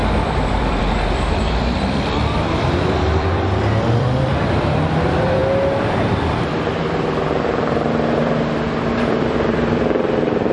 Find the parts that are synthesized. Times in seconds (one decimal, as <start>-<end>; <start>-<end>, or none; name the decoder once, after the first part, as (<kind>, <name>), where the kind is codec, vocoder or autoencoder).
0.0-5.4 (vocoder, BigVGAN v2); 9.0-10.5